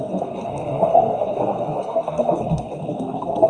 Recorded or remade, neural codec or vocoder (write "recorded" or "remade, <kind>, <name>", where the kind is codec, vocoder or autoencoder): remade, codec, SNAC